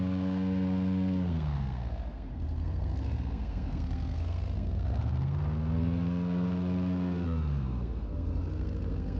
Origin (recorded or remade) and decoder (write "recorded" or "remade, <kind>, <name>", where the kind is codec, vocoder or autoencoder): remade, codec, SNAC